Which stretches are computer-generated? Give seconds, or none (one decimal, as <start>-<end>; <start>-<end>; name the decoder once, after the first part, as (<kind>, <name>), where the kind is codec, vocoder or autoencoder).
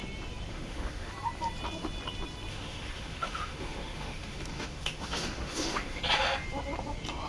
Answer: 0.5-1.1 (autoencoder, DAC-VAE); 2.5-6.0